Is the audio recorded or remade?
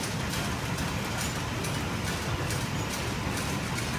recorded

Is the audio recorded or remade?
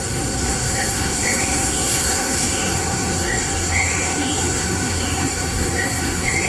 remade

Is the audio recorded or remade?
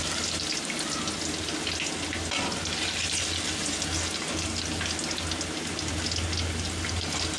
recorded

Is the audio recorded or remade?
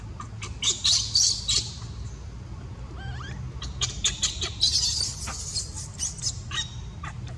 recorded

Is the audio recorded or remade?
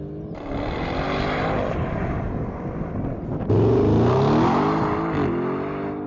recorded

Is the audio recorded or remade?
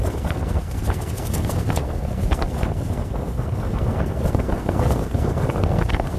remade